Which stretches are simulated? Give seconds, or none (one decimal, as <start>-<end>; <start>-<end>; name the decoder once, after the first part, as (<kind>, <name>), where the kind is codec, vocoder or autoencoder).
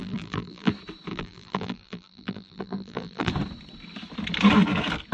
0.0-0.7 (vocoder, BigVGAN v2); 1.1-3.3